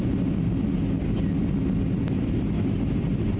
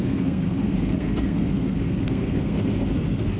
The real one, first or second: first